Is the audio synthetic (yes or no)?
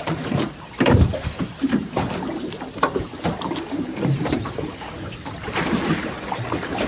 yes